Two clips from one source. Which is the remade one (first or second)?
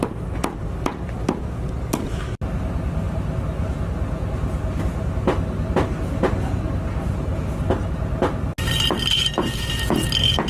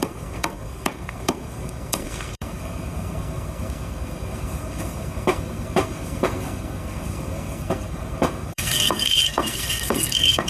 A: second